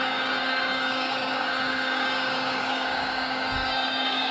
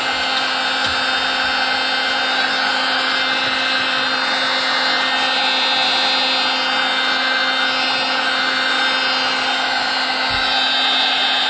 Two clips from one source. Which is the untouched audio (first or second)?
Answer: second